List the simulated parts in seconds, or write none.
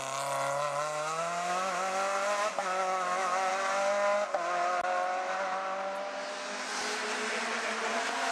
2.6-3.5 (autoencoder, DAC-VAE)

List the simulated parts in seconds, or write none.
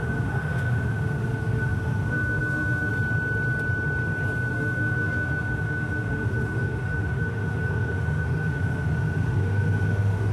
0.0-2.9 (autoencoder, DAC-VAE); 4.5-10.3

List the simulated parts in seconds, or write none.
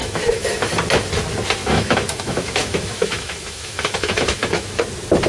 0.0-0.7 (autoencoder, DAC-VAE); 1.6-4.8